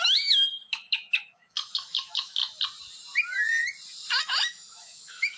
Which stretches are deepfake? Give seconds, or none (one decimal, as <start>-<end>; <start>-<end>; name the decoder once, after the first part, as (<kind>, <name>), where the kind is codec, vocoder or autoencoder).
0.0-2.4 (autoencoder, DAC-VAE); 4.2-5.4